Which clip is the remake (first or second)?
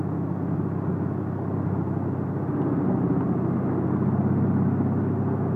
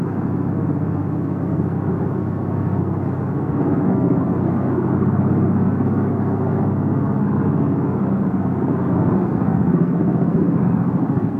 second